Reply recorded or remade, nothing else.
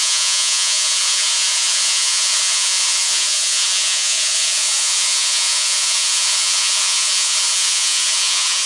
remade